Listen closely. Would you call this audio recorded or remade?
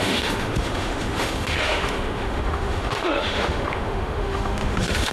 remade